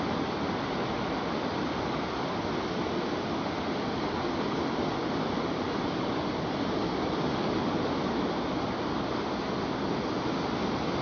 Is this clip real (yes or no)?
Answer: yes